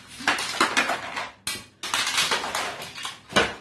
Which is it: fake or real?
real